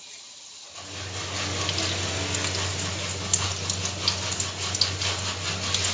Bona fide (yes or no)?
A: yes